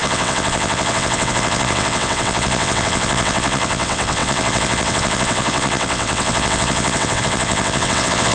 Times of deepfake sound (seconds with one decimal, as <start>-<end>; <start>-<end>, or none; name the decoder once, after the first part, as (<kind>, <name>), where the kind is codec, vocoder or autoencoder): 0.0-8.3 (vocoder, WaveNeXt)